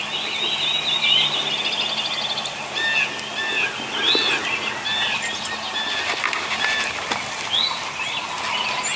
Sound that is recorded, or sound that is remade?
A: recorded